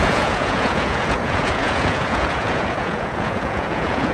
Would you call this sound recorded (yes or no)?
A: no